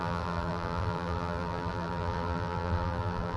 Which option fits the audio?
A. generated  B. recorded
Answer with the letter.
A